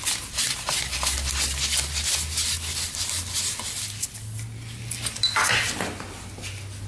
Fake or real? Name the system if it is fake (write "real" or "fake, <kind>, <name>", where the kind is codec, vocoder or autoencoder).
real